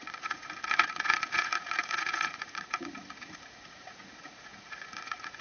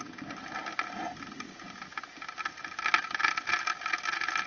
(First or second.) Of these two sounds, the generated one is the first